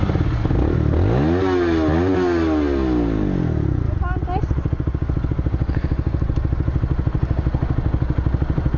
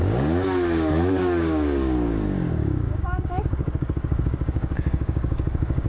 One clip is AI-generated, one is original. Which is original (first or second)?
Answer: first